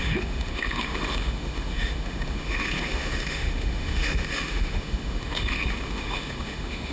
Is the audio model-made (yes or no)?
yes